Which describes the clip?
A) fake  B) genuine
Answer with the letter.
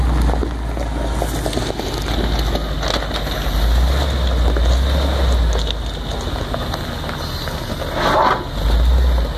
B